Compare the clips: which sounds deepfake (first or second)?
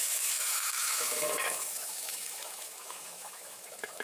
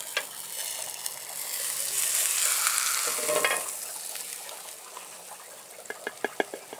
first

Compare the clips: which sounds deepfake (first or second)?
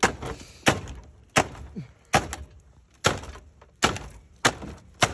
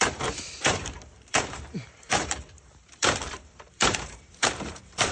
second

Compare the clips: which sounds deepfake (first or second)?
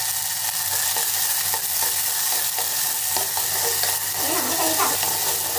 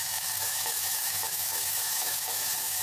second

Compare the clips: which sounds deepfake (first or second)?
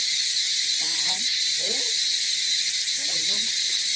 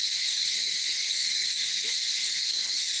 second